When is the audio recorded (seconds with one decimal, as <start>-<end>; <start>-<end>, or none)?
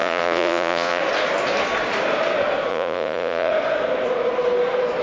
1.0-2.7; 3.5-5.0